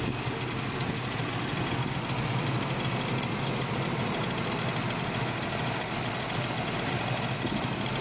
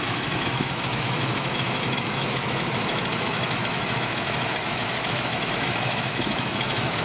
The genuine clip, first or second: first